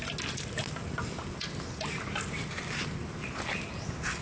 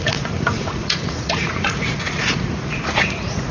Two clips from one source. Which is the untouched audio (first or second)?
first